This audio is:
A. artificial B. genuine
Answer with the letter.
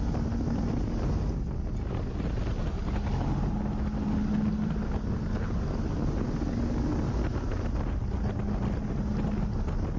B